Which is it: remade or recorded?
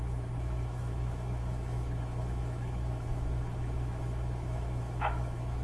remade